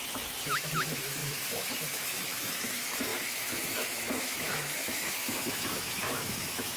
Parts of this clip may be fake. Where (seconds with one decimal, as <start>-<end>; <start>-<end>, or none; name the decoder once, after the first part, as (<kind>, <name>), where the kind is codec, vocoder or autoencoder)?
0.0-6.8 (autoencoder, DAC-VAE)